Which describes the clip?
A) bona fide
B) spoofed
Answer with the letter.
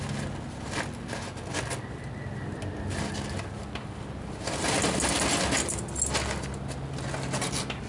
A